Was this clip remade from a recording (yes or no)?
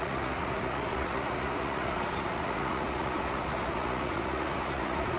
yes